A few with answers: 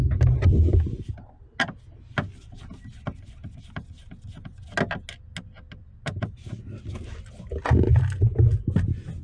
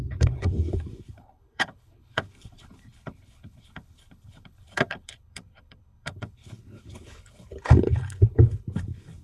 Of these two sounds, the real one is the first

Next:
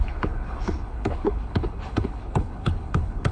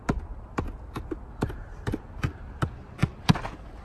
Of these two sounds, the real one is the second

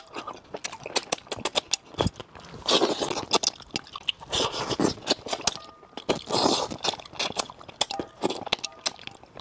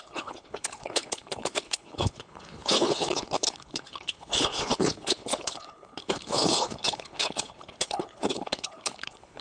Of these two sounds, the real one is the first